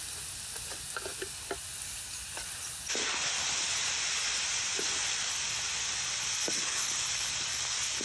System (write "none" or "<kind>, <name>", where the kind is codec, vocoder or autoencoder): none